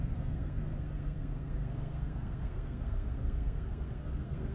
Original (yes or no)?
no